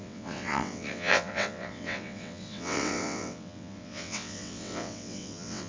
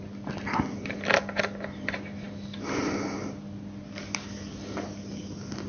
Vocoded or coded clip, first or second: first